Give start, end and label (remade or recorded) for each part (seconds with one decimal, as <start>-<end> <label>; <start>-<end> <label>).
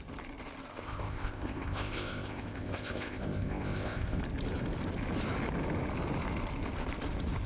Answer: 0.0-0.7 recorded; 0.7-4.2 remade; 4.2-7.5 recorded